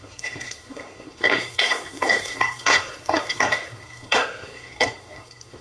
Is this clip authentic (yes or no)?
no